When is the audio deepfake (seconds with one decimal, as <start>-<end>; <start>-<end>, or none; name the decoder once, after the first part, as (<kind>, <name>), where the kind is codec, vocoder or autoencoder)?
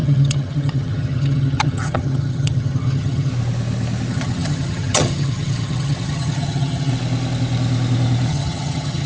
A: 0.0-3.3 (vocoder, HiFi-GAN); 4.1-6.9; 8.3-9.1